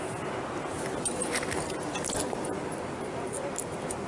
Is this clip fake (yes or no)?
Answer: no